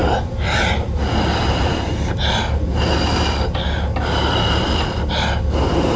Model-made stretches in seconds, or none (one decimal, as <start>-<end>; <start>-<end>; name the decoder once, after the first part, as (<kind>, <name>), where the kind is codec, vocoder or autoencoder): 0.0-2.7 (vocoder, BigVGAN v2); 4.6-6.0